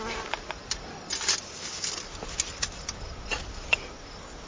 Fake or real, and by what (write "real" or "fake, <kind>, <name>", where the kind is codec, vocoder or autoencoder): real